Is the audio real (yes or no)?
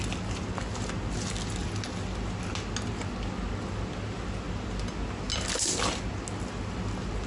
yes